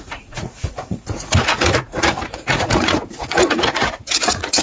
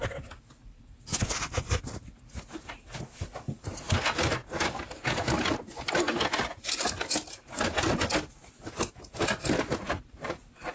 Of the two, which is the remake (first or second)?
first